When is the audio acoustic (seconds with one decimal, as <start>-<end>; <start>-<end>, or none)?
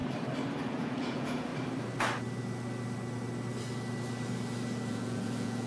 0.0-0.7; 1.5-4.9